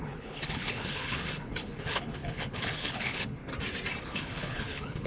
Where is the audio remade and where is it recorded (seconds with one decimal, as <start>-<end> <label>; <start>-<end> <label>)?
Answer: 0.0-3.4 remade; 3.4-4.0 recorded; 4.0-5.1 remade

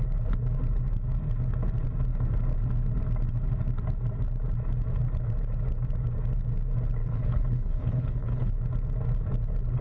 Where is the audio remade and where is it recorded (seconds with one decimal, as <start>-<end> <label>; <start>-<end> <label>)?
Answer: 0.0-7.0 recorded; 7.0-8.5 remade; 8.5-9.8 recorded

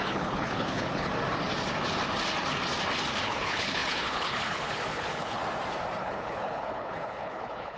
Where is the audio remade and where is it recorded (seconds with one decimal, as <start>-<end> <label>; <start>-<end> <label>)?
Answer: 0.0-1.1 remade; 1.1-3.2 recorded; 3.2-5.4 remade; 5.4-6.0 recorded; 6.0-7.8 remade